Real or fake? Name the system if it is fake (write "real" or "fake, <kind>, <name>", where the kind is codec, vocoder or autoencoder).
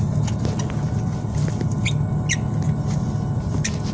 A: real